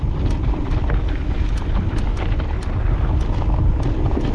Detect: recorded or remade recorded